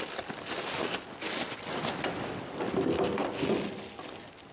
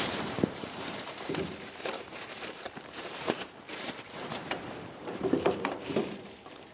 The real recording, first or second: first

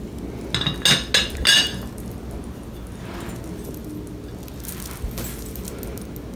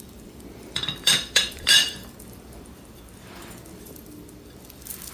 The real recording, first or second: first